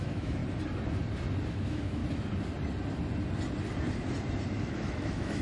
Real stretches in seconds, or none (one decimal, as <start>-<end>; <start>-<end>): 0.4-1.5; 2.0-4.6